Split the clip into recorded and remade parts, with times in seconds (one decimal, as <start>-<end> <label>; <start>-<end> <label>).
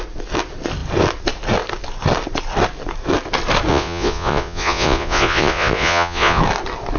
0.0-3.7 recorded; 3.7-6.4 remade; 6.4-7.0 recorded